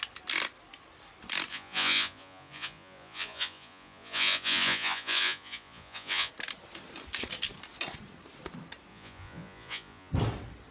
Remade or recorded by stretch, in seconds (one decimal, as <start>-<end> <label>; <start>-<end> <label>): 0.0-1.5 recorded; 1.5-6.3 remade; 6.3-8.9 recorded; 8.9-10.1 remade; 10.1-10.7 recorded